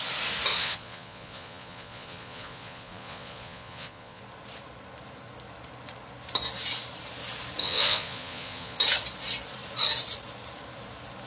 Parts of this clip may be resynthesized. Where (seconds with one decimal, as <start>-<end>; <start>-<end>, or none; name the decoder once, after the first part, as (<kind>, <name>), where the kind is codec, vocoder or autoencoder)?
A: 0.5-4.2 (vocoder, Vocos); 7.6-8.8